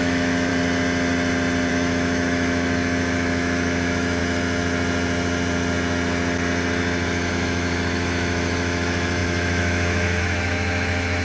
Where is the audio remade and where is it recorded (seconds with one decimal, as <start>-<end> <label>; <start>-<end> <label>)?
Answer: 0.0-0.5 remade; 0.5-1.7 recorded; 1.7-4.2 remade; 4.2-7.3 recorded; 7.3-11.2 remade